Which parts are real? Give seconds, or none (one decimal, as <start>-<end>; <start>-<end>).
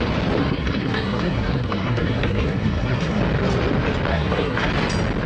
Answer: 0.0-0.4; 3.2-4.1; 4.7-5.3